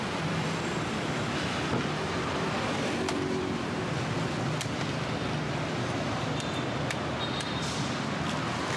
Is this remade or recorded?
remade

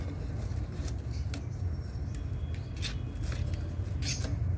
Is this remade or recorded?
recorded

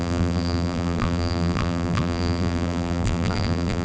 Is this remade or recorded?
remade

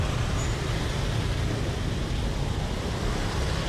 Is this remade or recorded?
remade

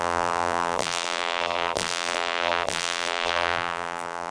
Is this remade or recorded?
remade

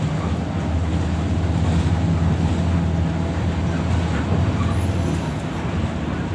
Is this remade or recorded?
recorded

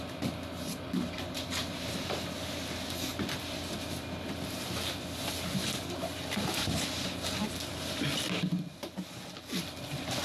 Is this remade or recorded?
recorded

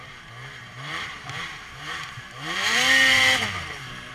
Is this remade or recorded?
remade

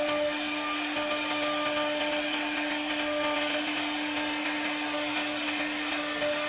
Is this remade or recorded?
recorded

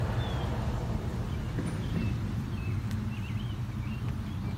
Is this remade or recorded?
recorded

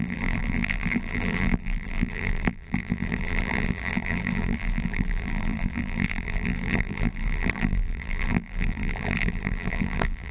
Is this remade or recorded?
remade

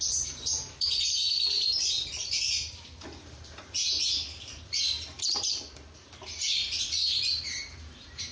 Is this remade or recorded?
remade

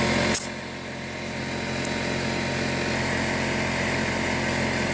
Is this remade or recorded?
recorded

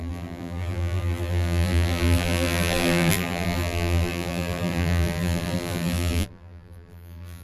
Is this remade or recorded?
remade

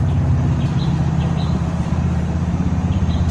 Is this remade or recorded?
remade